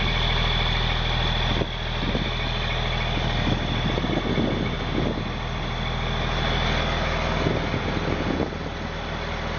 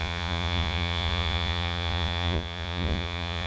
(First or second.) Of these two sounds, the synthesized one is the second